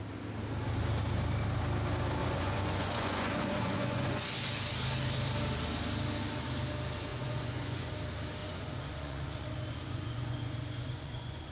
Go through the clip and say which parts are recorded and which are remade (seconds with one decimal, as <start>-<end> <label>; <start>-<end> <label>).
0.0-2.2 recorded; 2.2-4.3 remade; 4.3-7.1 recorded; 7.1-7.9 remade; 7.9-8.4 recorded; 8.4-11.5 remade